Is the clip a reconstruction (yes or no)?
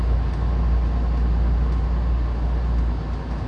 no